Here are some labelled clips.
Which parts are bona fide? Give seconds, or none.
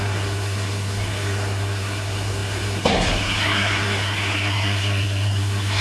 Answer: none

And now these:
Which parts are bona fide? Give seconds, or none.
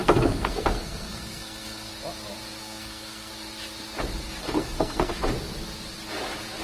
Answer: 1.9-2.6; 3.3-4.4; 5.2-6.6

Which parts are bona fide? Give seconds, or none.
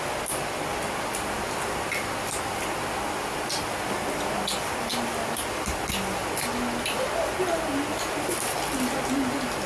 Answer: 0.0-9.7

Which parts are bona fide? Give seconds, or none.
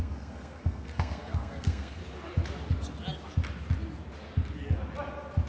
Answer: 2.0-5.5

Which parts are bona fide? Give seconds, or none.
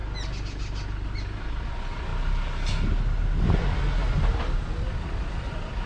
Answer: 0.0-5.9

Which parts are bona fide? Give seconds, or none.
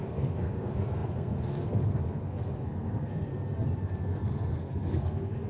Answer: 3.3-4.0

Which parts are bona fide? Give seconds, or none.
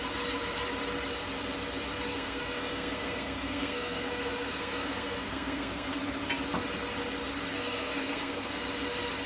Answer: 0.0-2.1; 5.9-7.5; 8.5-9.3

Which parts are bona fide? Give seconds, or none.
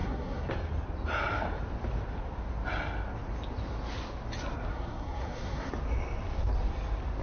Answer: 0.5-4.7; 5.7-7.2